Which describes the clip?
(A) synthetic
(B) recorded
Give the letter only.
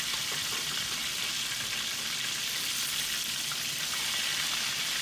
B